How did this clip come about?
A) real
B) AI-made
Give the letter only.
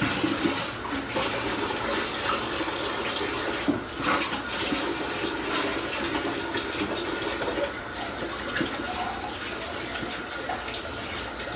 A